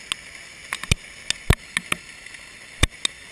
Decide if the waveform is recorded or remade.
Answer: recorded